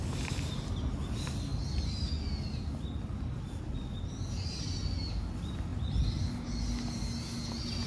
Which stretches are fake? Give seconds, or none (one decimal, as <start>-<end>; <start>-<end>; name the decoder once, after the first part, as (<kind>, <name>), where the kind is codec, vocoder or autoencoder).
none